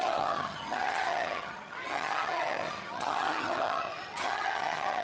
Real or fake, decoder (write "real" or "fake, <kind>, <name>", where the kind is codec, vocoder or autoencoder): fake, vocoder, HiFi-GAN